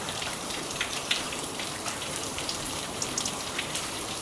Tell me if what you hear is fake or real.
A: fake